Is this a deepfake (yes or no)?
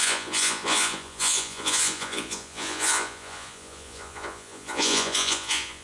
yes